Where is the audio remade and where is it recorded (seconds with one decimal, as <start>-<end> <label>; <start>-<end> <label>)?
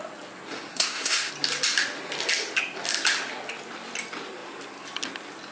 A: 0.0-0.7 recorded; 0.7-1.3 remade; 1.3-5.5 recorded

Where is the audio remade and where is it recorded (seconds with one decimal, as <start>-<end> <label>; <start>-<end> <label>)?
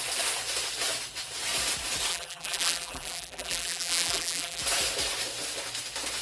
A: 0.0-2.1 recorded; 2.1-4.6 remade; 4.6-6.2 recorded